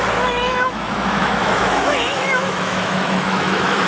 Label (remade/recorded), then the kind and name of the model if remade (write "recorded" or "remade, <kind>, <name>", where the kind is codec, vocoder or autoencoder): remade, autoencoder, DAC-VAE